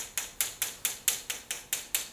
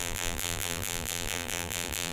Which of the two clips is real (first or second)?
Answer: first